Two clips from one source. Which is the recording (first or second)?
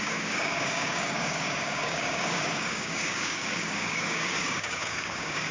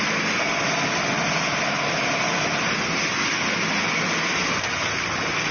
second